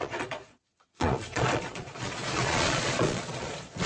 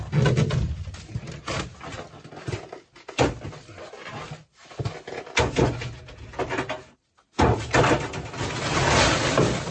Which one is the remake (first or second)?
first